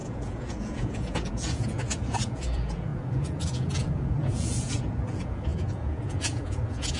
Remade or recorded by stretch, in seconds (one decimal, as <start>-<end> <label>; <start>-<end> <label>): 0.0-7.0 remade